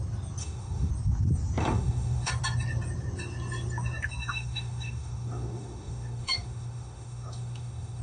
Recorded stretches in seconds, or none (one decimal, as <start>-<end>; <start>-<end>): 0.0-0.4; 0.9-1.6; 2.3-4.2

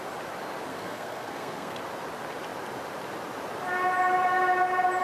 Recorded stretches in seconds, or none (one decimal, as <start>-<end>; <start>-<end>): 0.0-0.7; 1.8-5.0

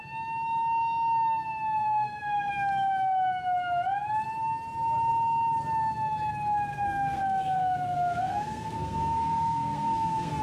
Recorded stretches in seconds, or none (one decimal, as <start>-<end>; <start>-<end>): 0.0-1.8; 2.5-6.7